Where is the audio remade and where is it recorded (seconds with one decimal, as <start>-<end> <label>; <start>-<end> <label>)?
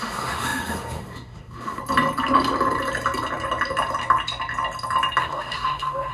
0.0-1.8 remade; 1.8-5.2 recorded; 5.2-6.1 remade